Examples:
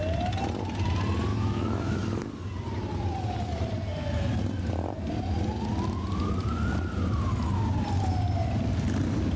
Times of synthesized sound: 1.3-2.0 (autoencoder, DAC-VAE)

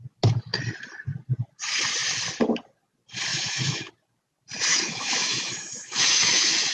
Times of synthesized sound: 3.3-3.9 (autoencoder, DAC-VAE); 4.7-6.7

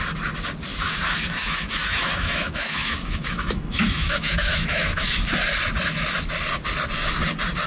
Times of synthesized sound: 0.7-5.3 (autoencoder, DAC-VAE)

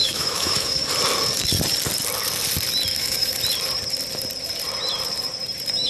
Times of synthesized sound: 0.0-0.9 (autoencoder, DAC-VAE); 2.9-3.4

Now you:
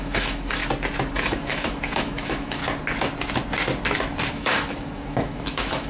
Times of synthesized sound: 0.0-0.6 (autoencoder, DAC-VAE); 1.1-2.6; 4.3-5.9

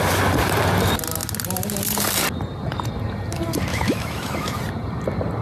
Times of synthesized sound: 3.7-4.6 (autoencoder, DAC-VAE)

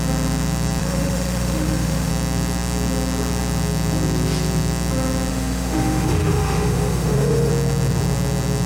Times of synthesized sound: 0.8-2.1 (autoencoder, DAC-VAE); 5.3-7.5

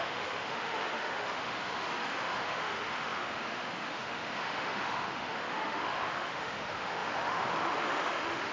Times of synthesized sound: 0.0-8.5 (autoencoder, DAC-VAE)